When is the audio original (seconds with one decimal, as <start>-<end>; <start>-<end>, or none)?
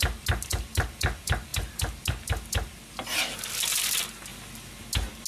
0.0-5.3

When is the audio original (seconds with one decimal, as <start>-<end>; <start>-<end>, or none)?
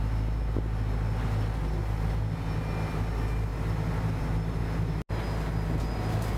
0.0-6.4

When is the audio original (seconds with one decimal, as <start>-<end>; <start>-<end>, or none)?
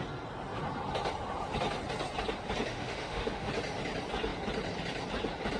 0.0-2.7; 3.5-5.6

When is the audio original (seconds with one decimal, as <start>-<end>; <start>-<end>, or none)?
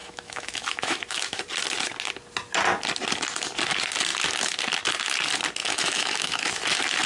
1.4-5.6; 6.6-7.1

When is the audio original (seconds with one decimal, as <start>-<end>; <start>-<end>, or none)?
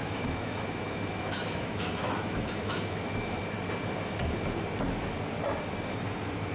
3.4-6.5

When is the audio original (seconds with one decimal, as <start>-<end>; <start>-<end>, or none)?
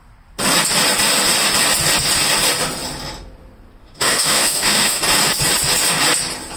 0.0-3.8; 5.0-6.6